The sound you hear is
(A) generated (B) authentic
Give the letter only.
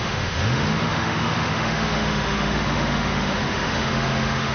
A